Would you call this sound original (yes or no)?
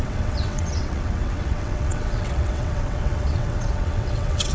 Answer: no